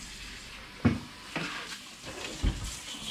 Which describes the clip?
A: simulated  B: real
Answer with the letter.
B